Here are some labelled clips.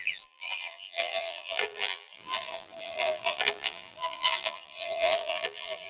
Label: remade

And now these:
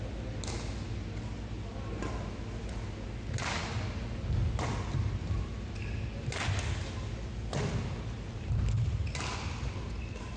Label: recorded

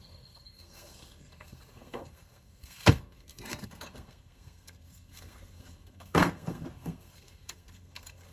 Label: remade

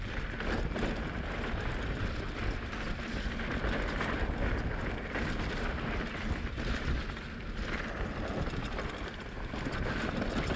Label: recorded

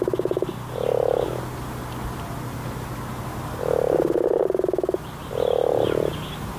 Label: recorded